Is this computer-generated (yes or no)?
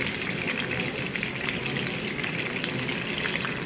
no